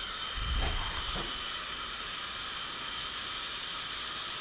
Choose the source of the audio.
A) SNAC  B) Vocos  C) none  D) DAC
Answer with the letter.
C